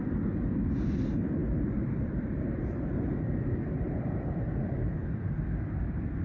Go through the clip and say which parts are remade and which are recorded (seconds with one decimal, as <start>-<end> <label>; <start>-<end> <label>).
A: 0.0-1.4 recorded; 1.4-5.0 remade; 5.0-6.2 recorded